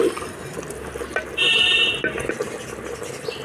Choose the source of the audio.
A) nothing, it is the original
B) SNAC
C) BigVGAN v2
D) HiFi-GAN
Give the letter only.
A